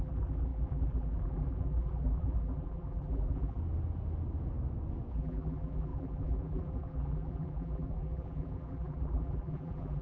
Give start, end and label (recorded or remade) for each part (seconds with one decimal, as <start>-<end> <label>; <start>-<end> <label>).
0.0-3.6 remade; 3.6-5.1 recorded; 5.1-10.0 remade